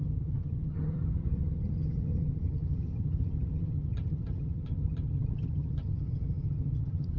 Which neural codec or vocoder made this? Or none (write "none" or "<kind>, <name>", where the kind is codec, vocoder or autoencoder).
vocoder, HiFi-GAN